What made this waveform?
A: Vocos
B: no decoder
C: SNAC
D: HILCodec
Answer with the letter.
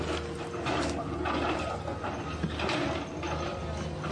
B